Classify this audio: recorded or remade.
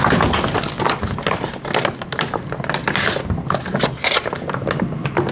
recorded